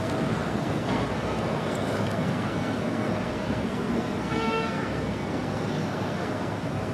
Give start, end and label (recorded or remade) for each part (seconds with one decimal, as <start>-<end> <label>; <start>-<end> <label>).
0.0-6.9 remade